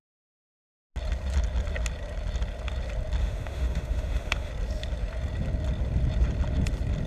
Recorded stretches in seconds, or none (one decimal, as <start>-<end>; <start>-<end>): 0.0-3.2; 4.5-7.1